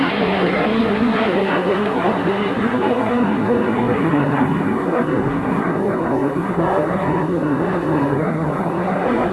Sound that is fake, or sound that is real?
fake